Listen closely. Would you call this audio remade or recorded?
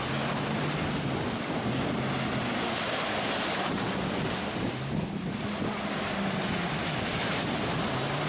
recorded